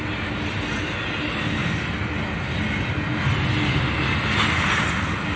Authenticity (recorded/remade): recorded